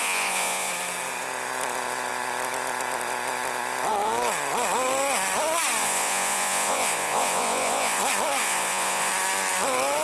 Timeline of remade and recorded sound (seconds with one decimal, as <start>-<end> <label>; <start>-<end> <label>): 0.0-0.7 remade; 0.7-5.8 recorded; 5.8-8.0 remade; 8.0-8.4 recorded; 8.4-9.1 remade; 9.1-10.0 recorded